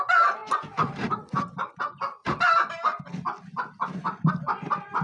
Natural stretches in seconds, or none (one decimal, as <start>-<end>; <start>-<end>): 0.0-5.0